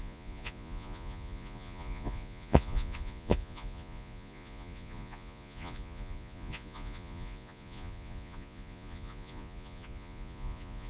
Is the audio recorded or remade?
remade